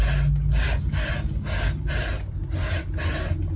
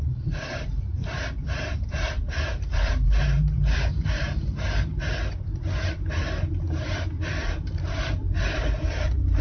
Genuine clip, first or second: first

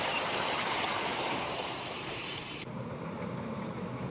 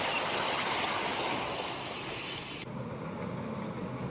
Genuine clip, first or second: second